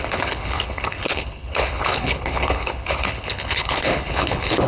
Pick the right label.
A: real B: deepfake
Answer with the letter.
B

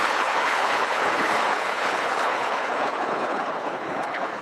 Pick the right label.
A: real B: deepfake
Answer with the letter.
B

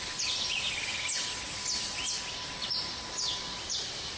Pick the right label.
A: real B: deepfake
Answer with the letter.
A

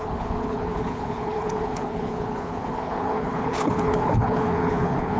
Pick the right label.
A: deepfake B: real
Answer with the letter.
A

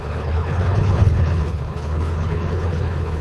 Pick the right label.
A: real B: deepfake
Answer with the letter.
B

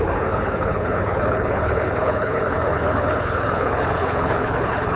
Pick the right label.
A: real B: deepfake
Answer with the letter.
B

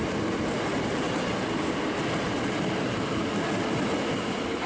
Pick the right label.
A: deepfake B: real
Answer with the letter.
B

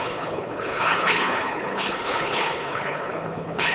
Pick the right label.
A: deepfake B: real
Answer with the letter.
A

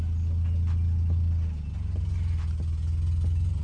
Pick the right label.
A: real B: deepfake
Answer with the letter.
A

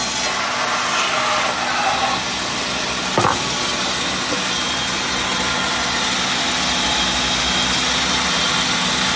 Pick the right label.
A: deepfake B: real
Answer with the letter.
B